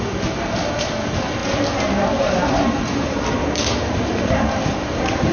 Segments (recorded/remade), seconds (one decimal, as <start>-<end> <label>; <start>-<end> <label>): 0.0-5.3 recorded